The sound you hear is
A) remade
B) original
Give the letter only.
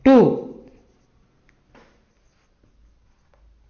B